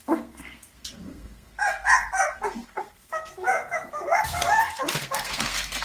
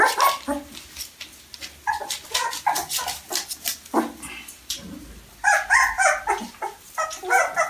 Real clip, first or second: second